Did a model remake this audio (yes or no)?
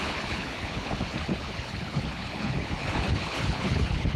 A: yes